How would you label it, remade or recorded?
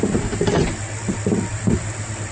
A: recorded